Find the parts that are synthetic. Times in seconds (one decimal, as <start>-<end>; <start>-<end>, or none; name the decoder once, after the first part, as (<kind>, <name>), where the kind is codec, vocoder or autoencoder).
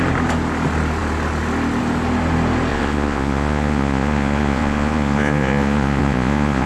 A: 2.7-6.7 (vocoder, Vocos)